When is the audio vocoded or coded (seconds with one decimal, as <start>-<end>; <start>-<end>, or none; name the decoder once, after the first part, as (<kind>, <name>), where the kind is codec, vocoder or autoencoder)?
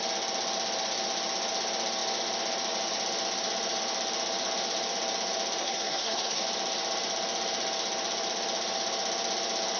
5.6-6.4 (codec, SNAC)